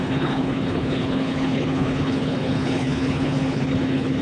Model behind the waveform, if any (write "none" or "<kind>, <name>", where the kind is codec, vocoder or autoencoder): codec, HILCodec